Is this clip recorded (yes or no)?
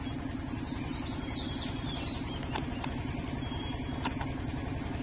yes